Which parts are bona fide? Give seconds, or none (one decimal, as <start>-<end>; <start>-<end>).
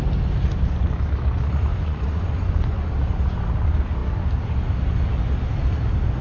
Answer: 0.0-1.7; 2.9-6.2